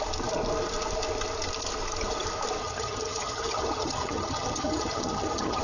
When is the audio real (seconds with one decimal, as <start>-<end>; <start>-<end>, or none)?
0.0-2.6